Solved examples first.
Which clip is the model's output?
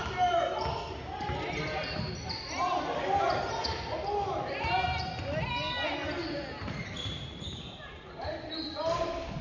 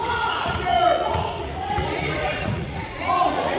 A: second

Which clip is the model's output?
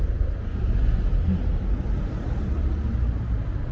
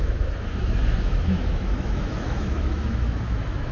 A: second